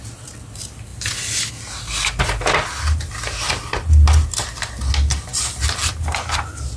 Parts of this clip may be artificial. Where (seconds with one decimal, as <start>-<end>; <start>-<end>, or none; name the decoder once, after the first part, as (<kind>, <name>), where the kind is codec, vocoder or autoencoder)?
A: none